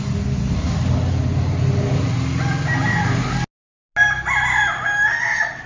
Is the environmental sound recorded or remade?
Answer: recorded